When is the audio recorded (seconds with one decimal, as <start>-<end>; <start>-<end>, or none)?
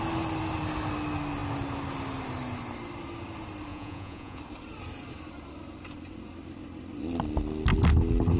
0.0-3.7; 4.4-8.4